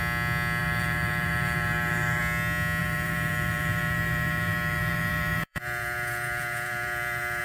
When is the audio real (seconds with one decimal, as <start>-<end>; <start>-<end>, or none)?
0.0-0.6; 2.2-2.8